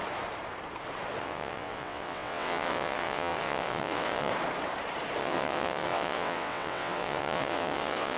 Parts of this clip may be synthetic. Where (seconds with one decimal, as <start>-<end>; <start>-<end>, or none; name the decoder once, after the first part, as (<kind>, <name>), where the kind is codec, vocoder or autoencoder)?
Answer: 1.2-4.3 (vocoder, WaveNeXt); 5.2-8.2